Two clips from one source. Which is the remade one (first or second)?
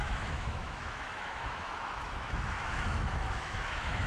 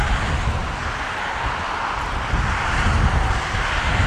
first